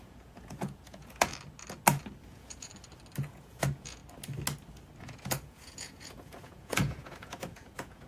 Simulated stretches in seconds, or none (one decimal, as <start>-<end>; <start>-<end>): 0.0-1.3; 2.3-2.7; 3.2-4.0; 5.0-8.1